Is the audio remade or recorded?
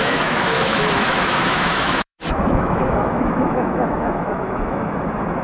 remade